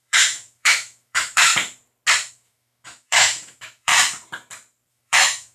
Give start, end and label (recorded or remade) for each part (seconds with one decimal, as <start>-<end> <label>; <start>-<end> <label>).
0.0-1.5 remade; 1.5-2.3 recorded; 2.3-3.9 remade; 3.9-4.9 recorded; 4.9-5.5 remade